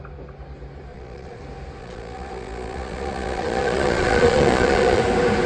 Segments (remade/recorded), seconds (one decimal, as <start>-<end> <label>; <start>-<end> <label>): 0.0-0.9 recorded; 0.9-1.4 remade; 1.4-1.8 recorded; 1.8-5.0 remade; 5.0-5.5 recorded